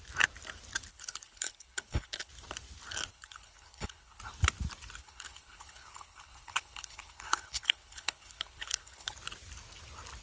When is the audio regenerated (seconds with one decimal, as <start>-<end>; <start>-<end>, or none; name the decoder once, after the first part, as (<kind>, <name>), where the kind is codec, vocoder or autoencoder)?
0.9-2.3 (codec, HILCodec); 3.1-4.2; 5.0-9.1